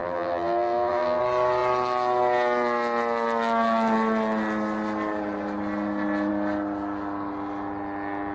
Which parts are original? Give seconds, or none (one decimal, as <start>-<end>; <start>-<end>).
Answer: 1.2-8.3